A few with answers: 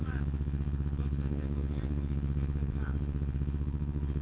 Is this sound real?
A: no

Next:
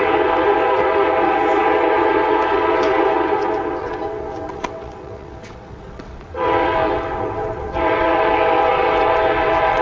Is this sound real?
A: no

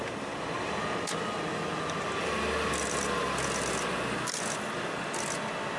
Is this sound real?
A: yes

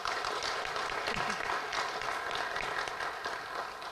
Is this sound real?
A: yes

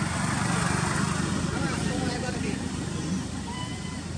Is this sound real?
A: yes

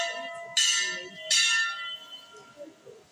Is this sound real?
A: yes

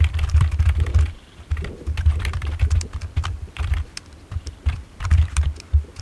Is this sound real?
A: no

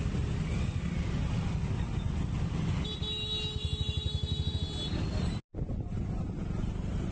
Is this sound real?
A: yes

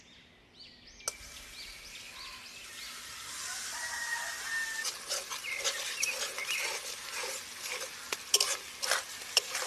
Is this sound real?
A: yes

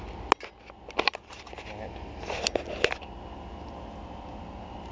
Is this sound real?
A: yes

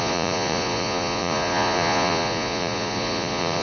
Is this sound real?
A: no